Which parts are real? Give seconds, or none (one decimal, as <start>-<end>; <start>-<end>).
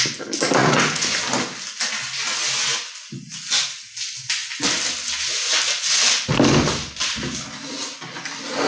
0.0-0.6; 1.2-8.7